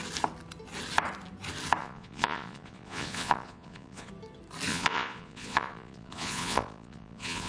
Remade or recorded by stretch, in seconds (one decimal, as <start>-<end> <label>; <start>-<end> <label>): 0.0-1.8 recorded; 1.8-4.1 remade; 4.1-4.7 recorded; 4.7-7.5 remade